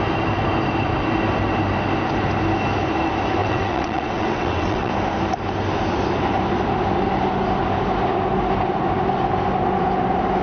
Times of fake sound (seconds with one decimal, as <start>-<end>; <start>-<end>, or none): 3.4-4.9